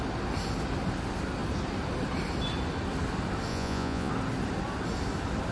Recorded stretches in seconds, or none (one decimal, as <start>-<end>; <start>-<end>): 0.0-3.5; 4.1-5.5